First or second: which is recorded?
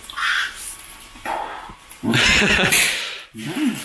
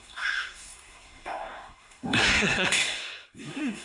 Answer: first